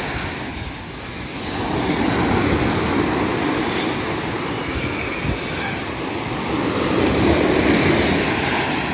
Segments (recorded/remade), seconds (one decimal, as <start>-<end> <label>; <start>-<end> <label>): 0.0-3.3 recorded; 3.3-8.1 remade; 8.1-8.9 recorded